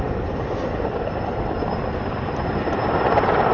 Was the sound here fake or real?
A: fake